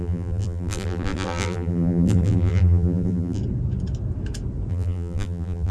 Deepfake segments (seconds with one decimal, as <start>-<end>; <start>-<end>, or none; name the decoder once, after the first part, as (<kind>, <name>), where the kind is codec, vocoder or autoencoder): 0.0-3.4 (vocoder, BigVGAN v2); 4.7-5.7